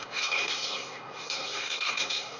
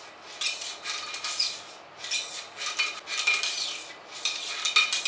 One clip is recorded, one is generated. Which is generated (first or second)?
first